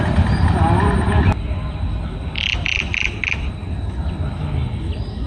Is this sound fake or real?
real